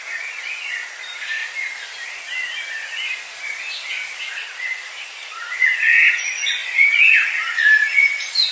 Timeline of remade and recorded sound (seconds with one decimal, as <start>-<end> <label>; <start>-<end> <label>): 0.0-1.4 remade; 1.4-4.3 recorded; 4.3-8.5 remade